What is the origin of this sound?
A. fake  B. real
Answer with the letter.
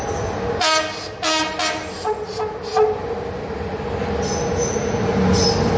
B